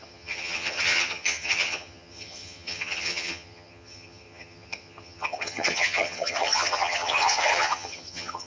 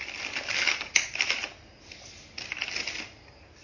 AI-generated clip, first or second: first